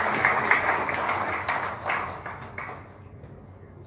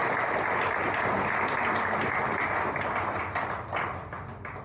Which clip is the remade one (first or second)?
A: first